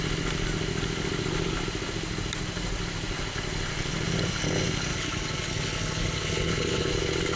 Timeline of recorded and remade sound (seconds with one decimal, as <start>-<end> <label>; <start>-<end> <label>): 0.0-4.9 recorded; 4.9-6.9 remade; 6.9-7.4 recorded